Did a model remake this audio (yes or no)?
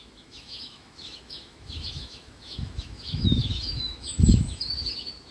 yes